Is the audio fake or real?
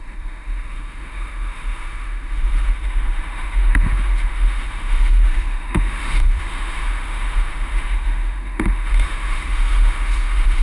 fake